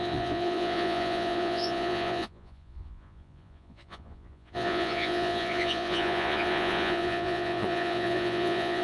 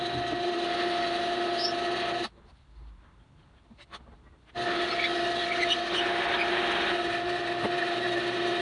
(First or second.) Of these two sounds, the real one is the second